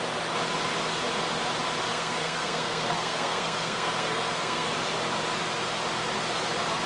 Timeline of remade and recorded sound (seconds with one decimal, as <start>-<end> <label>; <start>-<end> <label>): 0.0-1.9 recorded; 1.9-4.7 remade; 4.7-6.9 recorded